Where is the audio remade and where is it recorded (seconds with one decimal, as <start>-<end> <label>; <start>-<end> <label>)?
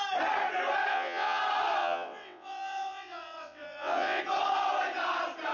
0.0-0.9 recorded; 0.9-1.4 remade; 1.4-1.8 recorded; 1.8-4.2 remade; 4.2-5.5 recorded